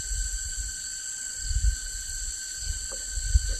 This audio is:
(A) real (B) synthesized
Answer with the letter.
A